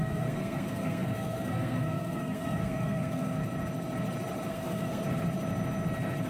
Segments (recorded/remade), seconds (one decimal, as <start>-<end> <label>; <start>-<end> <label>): 0.0-3.4 remade; 3.4-4.5 recorded; 4.5-5.0 remade; 5.0-6.3 recorded